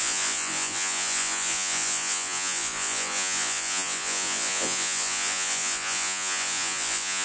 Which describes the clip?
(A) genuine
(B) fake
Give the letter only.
B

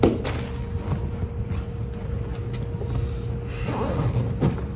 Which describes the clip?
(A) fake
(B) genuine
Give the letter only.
B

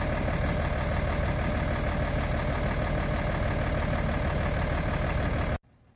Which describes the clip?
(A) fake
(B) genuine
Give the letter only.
B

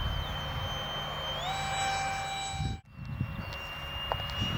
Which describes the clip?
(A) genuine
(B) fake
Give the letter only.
A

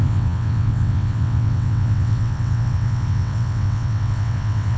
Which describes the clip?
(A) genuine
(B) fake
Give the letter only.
B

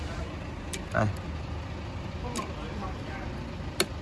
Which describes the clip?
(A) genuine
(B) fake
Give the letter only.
A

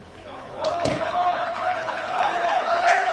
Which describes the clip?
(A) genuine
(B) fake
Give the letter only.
B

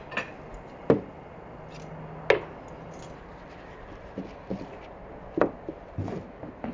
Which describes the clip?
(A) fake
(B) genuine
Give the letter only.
B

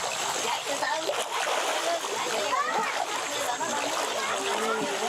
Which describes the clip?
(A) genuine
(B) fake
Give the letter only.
A